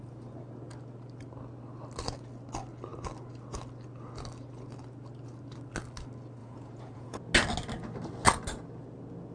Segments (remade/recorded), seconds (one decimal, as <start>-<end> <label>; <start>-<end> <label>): 0.0-6.4 recorded; 6.4-7.2 remade; 7.2-9.3 recorded